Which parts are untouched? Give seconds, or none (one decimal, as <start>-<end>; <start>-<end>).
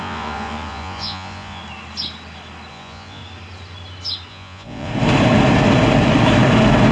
1.6-2.7; 3.2-4.3; 4.9-6.9